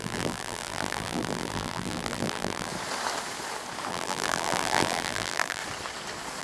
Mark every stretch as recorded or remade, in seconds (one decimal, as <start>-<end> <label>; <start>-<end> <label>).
0.0-2.7 remade; 2.7-3.9 recorded; 3.9-5.6 remade; 5.6-6.4 recorded